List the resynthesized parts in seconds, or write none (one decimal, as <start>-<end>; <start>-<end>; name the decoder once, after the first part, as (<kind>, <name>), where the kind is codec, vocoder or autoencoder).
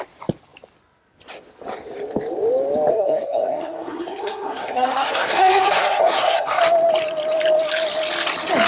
2.9-6.6 (codec, SNAC)